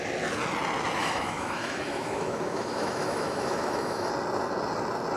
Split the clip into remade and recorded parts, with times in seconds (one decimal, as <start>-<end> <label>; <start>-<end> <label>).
0.0-1.0 recorded; 1.0-4.1 remade; 4.1-5.2 recorded